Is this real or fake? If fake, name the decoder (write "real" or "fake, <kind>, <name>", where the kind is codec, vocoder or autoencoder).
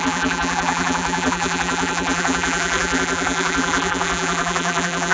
fake, vocoder, BigVGAN v2